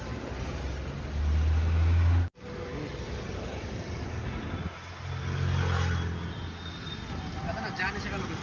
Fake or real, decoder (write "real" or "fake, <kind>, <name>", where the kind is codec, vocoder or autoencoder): real